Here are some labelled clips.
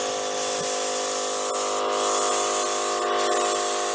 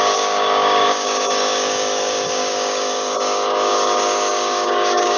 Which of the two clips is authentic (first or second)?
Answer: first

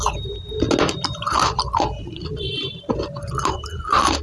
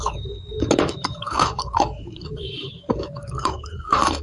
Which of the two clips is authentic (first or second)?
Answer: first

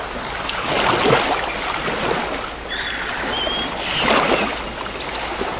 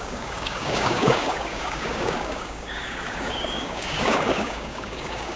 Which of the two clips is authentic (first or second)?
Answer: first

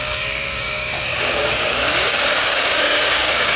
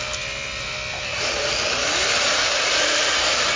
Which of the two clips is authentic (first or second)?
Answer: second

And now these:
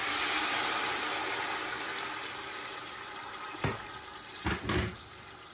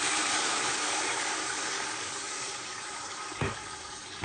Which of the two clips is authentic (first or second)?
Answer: first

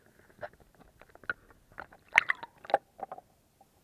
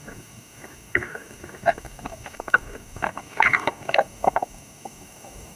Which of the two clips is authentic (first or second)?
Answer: first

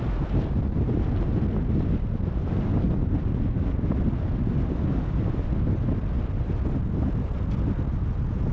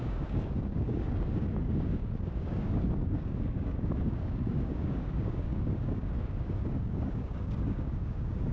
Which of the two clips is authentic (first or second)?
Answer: first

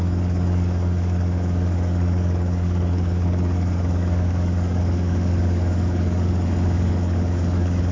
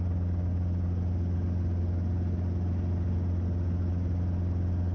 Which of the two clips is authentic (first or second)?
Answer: second